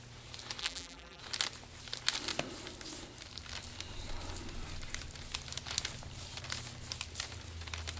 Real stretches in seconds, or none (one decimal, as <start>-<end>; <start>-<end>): 0.0-0.6; 1.2-8.0